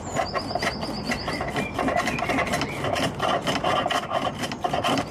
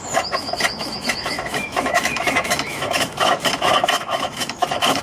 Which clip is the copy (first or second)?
second